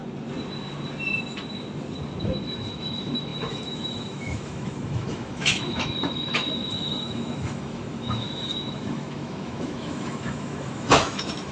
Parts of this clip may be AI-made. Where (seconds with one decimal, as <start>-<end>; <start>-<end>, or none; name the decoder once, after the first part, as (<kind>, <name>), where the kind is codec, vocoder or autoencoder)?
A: 2.2-11.5 (autoencoder, DAC-VAE)